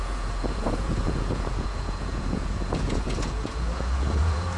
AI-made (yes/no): yes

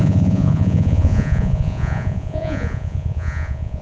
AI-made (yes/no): yes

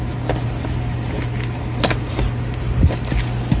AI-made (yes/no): no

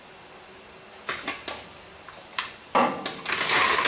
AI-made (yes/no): no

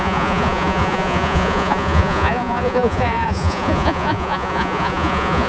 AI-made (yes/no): yes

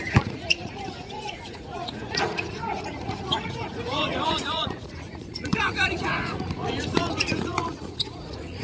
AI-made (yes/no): yes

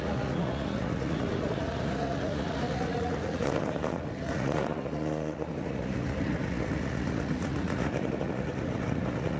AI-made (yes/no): yes